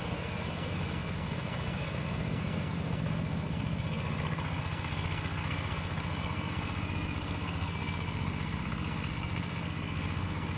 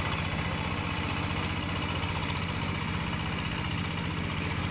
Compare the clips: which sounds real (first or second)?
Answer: second